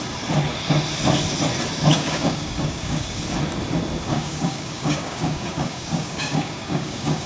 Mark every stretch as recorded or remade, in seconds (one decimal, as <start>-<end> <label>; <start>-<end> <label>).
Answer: 0.0-1.9 recorded; 1.9-3.2 remade; 3.2-4.1 recorded; 4.1-7.3 remade